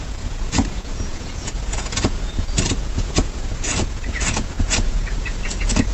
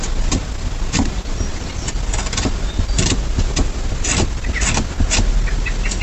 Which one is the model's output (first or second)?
first